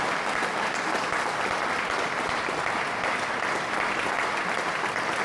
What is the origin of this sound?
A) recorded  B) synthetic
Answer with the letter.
A